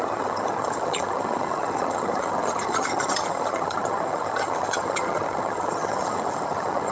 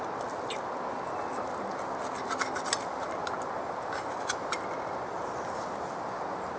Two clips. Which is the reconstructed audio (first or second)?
first